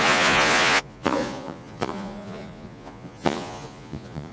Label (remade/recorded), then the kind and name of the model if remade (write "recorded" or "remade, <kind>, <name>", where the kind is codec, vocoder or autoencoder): remade, vocoder, Vocos